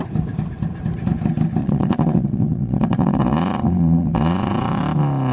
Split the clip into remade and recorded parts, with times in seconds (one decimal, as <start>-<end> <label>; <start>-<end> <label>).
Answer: 0.0-1.6 recorded; 1.6-4.8 remade; 4.8-5.3 recorded